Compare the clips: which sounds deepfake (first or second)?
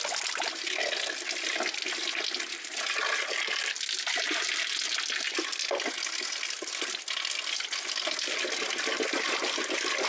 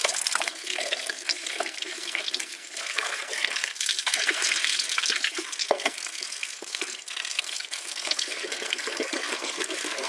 second